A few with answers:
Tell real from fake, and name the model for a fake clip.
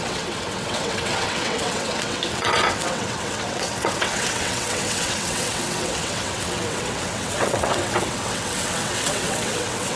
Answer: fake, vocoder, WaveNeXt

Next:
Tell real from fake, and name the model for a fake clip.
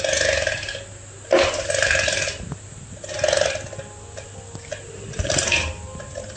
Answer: real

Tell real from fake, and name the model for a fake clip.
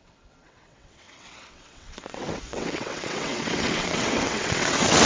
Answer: fake, vocoder, WaveNeXt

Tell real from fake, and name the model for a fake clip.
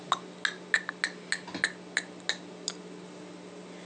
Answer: real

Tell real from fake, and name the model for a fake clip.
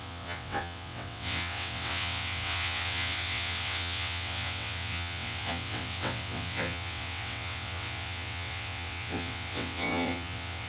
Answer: fake, vocoder, WaveNeXt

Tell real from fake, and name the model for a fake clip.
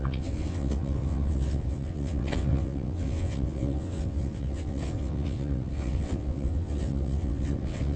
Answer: fake, vocoder, WaveNeXt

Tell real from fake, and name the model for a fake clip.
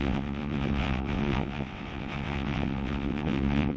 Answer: fake, vocoder, WaveNeXt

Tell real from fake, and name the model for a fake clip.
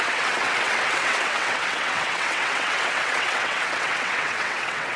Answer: fake, vocoder, WaveNeXt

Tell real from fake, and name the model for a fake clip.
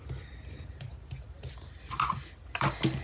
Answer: real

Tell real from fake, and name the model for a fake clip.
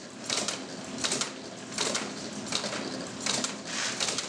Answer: real